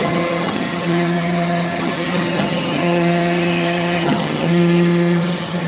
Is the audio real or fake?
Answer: fake